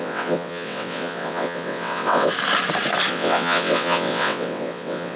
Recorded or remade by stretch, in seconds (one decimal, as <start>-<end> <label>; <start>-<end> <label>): 0.0-2.3 remade; 2.3-3.1 recorded; 3.1-5.2 remade